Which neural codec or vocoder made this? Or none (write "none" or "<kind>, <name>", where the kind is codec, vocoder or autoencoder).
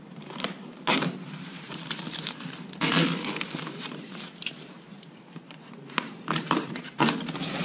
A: vocoder, BigVGAN v2